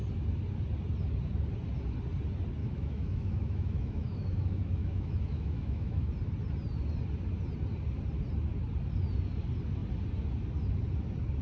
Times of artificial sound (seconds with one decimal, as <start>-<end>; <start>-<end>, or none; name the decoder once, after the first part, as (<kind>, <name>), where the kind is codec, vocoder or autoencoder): 2.6-6.1 (autoencoder, DAC-VAE)